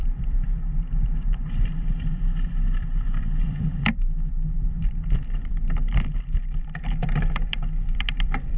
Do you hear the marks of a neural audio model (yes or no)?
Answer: yes